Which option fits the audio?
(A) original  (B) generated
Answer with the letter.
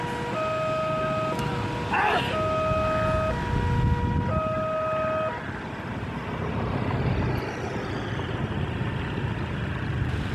A